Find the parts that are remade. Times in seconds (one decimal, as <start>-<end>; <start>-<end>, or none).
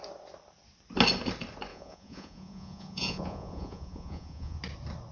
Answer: 1.7-4.6